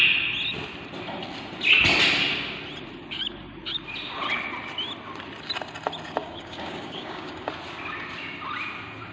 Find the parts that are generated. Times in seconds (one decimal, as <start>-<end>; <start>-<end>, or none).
6.2-7.5